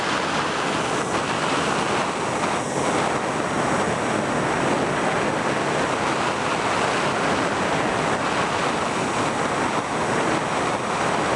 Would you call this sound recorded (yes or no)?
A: yes